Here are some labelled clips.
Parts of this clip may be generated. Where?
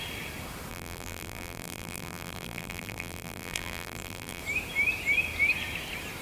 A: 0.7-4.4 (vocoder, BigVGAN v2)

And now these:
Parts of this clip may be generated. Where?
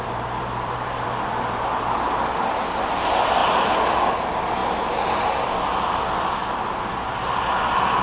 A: 0.0-3.4 (vocoder, BigVGAN v2); 4.1-8.0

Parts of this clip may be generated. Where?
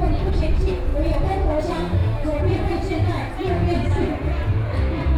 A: 0.0-0.9 (vocoder, BigVGAN v2); 1.6-5.2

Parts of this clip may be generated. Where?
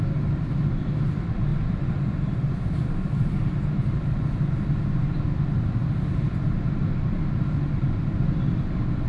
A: 1.5-4.9 (vocoder, BigVGAN v2); 5.8-7.1; 7.8-9.1